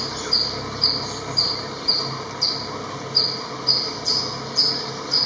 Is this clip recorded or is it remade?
remade